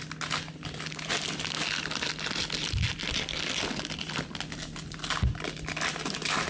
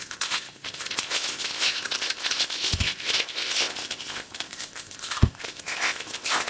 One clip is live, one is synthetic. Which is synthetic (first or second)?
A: second